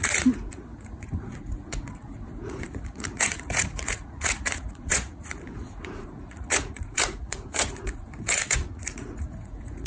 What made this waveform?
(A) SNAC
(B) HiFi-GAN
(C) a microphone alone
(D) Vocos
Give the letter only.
D